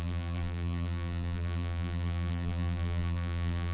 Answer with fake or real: fake